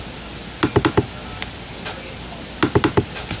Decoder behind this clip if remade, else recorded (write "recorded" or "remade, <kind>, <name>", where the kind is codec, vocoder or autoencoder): recorded